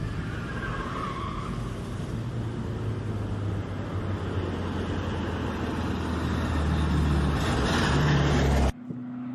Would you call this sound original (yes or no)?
yes